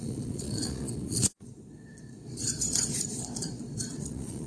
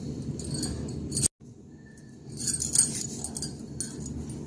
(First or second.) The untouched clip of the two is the second